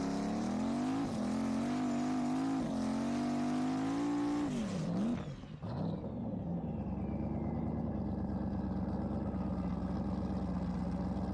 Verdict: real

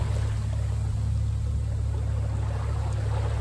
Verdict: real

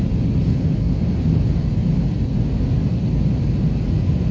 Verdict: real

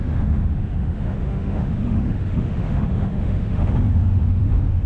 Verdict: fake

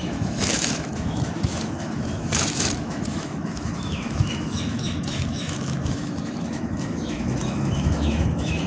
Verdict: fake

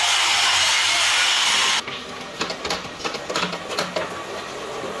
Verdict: real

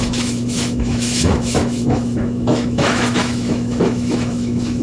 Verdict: fake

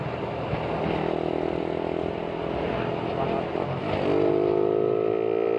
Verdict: real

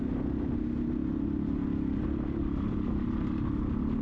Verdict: real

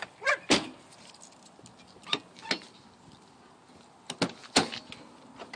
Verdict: real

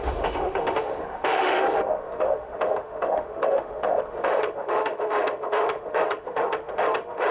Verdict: fake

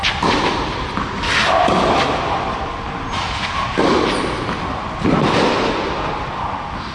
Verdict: real